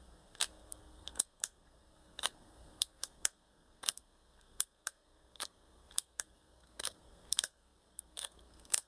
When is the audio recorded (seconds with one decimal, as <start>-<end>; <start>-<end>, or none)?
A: none